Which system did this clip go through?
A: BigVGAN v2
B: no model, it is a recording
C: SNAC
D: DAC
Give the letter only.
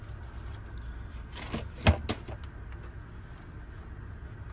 B